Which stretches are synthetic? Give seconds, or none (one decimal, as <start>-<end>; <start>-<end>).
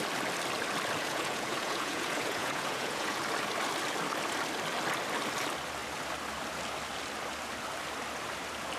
1.0-3.2